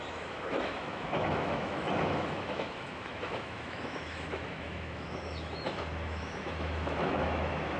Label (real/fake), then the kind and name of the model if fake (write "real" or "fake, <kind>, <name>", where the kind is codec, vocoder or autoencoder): fake, autoencoder, DAC-VAE